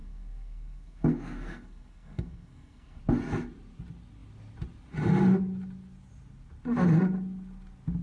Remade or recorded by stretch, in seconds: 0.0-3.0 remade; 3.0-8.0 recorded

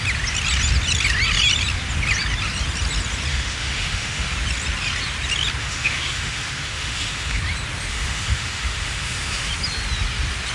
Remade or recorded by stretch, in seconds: 0.0-3.3 recorded; 3.3-4.3 remade; 4.3-5.6 recorded; 5.6-7.4 remade; 7.4-7.9 recorded; 7.9-9.5 remade; 9.5-10.5 recorded

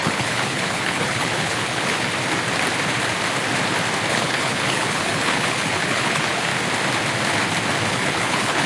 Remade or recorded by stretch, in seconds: 0.0-2.1 remade; 2.1-4.1 recorded; 4.1-6.5 remade; 6.5-7.9 recorded; 7.9-8.7 remade

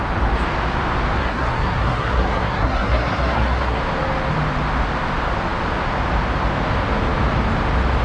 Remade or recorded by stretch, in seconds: 0.0-1.2 recorded; 1.2-3.8 remade; 3.8-8.0 recorded

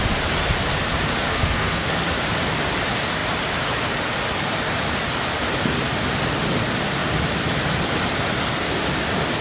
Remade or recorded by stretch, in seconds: 0.0-1.3 recorded; 1.3-1.9 remade; 1.9-9.4 recorded

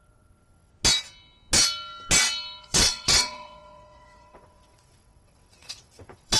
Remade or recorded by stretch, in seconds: 0.0-0.7 remade; 0.7-2.6 recorded; 2.6-6.4 remade

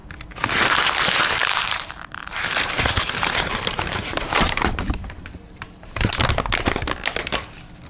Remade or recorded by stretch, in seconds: 0.0-1.4 recorded; 1.4-6.1 remade; 6.1-7.9 recorded